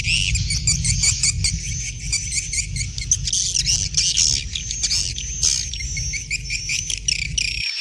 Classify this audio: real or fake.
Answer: real